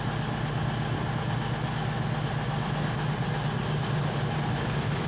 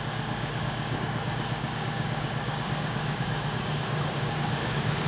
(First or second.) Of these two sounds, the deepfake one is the second